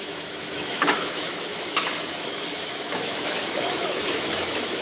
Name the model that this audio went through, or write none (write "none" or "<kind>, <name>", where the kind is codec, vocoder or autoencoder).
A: autoencoder, DAC-VAE